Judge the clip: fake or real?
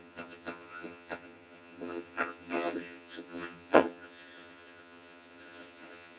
fake